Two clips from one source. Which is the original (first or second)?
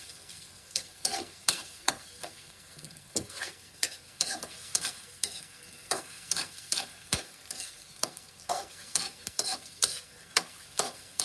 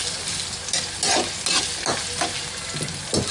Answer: second